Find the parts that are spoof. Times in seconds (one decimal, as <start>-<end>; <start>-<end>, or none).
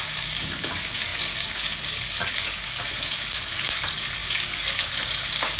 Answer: 0.0-5.6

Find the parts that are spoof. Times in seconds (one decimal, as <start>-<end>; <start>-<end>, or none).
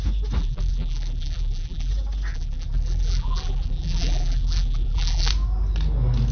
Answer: 0.4-1.9; 2.3-5.3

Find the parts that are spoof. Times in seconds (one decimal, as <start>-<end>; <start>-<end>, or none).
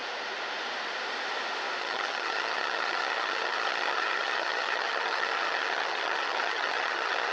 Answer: 1.8-7.3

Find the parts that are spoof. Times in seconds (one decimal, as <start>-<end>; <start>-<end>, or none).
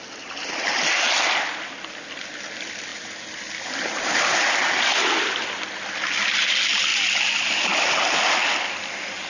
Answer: none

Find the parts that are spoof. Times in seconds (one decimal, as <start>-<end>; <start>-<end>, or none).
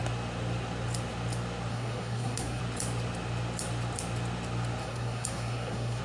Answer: 1.7-2.6; 4.8-6.0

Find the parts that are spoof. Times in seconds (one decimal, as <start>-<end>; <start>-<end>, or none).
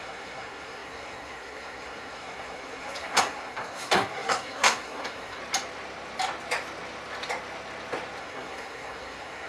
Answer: 0.0-5.4; 8.2-9.5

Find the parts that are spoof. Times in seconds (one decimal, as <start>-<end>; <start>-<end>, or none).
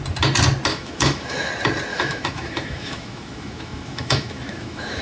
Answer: 0.7-1.5; 1.9-5.0